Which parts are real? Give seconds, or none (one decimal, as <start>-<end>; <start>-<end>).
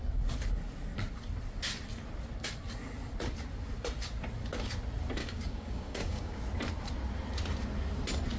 0.0-5.2; 6.4-8.4